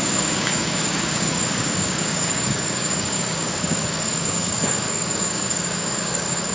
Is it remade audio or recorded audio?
remade